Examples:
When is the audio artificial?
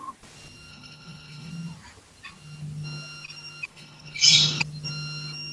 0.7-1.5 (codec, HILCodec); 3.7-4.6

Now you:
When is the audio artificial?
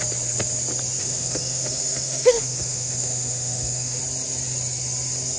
1.0-4.0 (autoencoder, DAC-VAE)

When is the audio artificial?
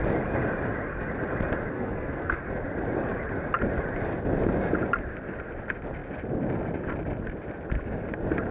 1.7-2.4 (codec, SNAC)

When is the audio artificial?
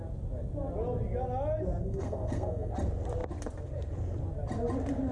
1.8-2.7 (codec, SNAC)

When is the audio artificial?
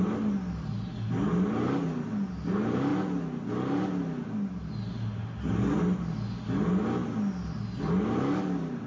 none